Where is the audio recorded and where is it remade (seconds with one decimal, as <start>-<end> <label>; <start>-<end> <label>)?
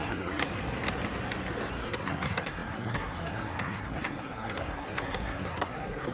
0.0-0.5 remade; 0.5-1.7 recorded; 1.7-6.1 remade